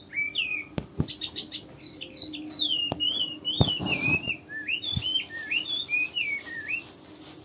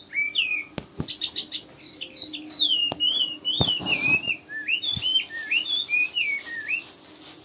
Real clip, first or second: second